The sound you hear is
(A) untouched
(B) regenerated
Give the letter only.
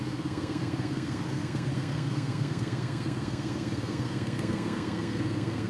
B